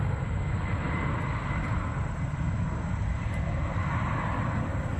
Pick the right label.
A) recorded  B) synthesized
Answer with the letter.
A